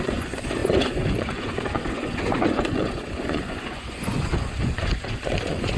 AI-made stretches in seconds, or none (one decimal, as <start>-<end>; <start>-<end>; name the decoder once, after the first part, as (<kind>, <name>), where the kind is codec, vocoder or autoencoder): 0.0-5.8 (vocoder, Vocos)